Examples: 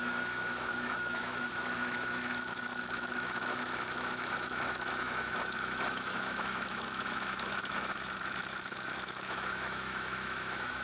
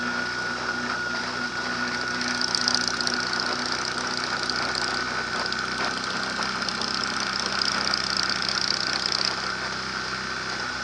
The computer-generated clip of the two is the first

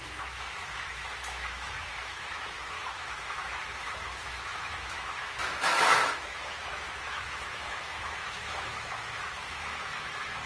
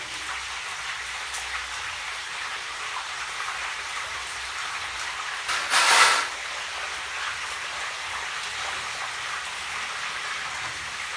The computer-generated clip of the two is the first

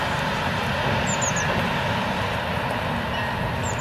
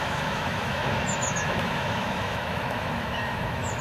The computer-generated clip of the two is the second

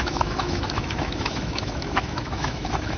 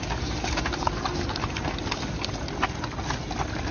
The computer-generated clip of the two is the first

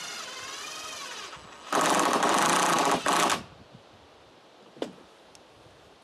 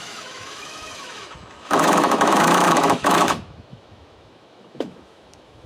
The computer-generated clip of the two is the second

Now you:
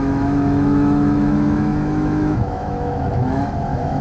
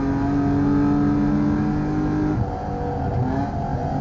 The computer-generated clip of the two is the first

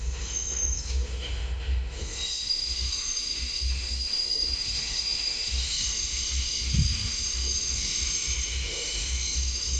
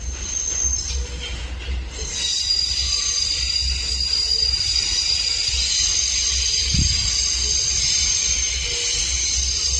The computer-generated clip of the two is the first